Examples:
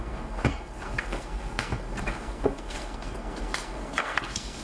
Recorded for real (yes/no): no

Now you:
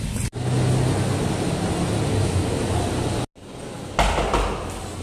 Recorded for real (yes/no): yes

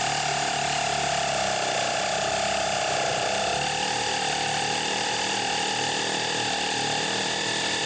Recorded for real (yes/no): yes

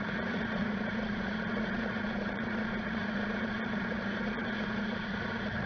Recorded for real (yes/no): no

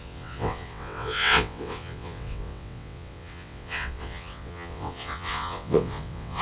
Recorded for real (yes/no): no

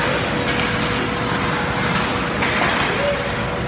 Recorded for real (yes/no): yes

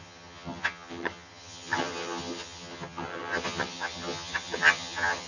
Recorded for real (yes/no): no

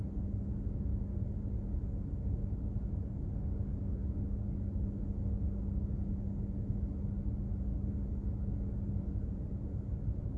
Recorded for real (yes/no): yes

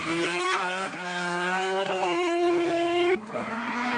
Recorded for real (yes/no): no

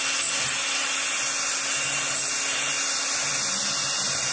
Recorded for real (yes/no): yes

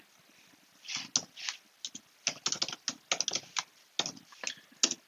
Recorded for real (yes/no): yes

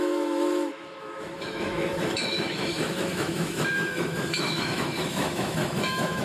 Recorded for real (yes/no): no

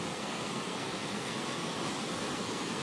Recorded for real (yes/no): no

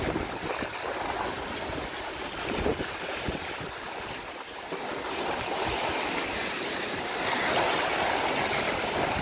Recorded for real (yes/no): yes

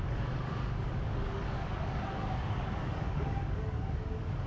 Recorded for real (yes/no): no